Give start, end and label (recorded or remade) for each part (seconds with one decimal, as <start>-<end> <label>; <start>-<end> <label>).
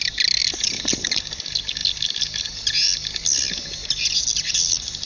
0.0-5.1 recorded